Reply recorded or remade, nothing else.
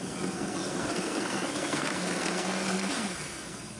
remade